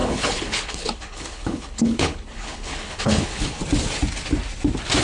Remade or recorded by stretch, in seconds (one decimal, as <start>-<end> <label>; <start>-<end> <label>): 0.0-3.6 remade; 3.6-5.0 recorded